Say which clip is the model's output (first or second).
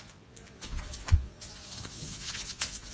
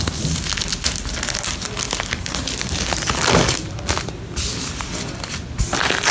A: first